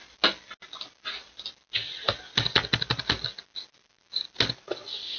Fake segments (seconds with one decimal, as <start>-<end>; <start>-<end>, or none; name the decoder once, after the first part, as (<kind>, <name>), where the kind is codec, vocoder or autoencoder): none